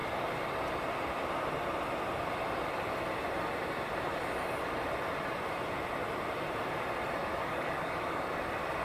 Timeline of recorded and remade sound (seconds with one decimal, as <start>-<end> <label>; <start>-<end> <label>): 0.0-7.3 recorded; 7.3-8.3 remade; 8.3-8.8 recorded

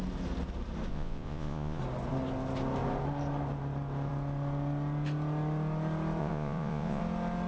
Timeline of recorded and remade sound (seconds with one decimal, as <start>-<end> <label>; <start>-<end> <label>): 0.0-0.9 recorded; 0.9-1.8 remade; 1.8-6.2 recorded; 6.2-7.0 remade; 7.0-7.5 recorded

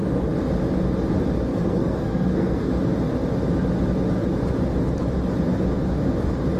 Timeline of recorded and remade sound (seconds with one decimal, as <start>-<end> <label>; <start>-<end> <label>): 0.0-1.5 recorded; 1.5-2.7 remade; 2.7-6.6 recorded

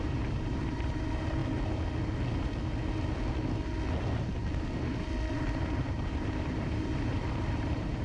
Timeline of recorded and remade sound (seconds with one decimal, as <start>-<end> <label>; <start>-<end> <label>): 0.0-1.4 remade; 1.4-5.3 recorded; 5.3-8.0 remade